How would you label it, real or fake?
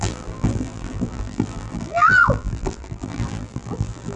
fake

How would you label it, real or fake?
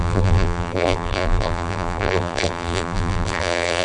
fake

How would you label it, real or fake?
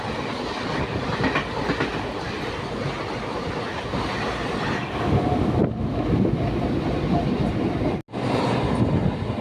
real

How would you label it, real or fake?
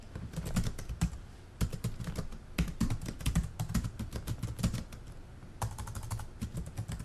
real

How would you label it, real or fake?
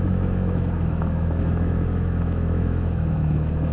fake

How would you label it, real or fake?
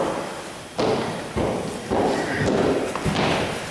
real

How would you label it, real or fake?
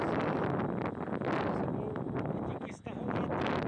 real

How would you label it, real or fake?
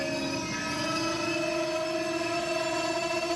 real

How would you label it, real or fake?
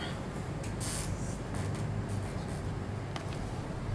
real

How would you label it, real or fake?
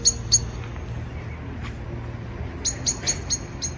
real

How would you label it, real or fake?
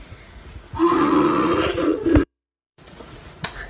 fake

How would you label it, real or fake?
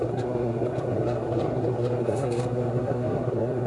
fake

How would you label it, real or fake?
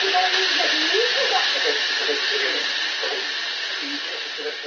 real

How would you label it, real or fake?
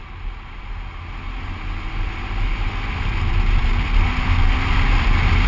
real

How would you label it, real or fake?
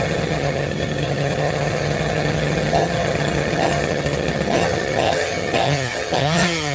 fake